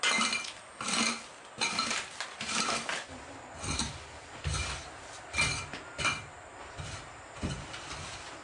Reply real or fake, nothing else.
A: real